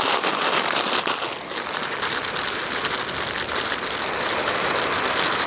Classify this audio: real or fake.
real